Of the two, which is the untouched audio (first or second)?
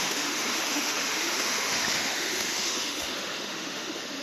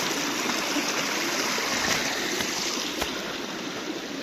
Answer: second